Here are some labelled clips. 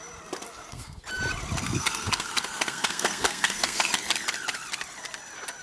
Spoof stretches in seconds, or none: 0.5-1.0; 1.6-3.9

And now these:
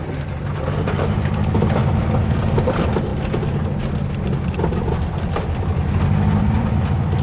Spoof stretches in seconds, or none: 0.0-1.8; 2.6-3.1; 4.7-7.2

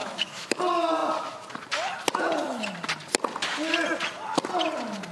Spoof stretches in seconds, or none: 0.0-0.6

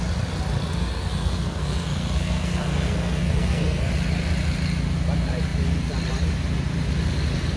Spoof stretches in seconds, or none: 0.7-3.9

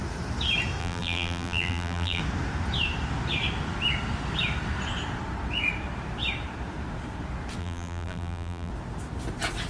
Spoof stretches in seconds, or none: 0.8-2.2; 7.6-8.7